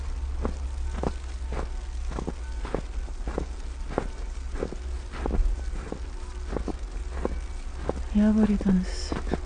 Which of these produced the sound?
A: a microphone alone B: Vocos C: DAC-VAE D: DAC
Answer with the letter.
A